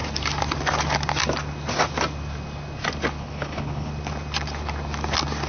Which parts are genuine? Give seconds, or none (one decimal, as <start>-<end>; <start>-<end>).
0.0-3.2; 3.9-5.5